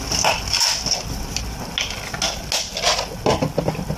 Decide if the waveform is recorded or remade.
recorded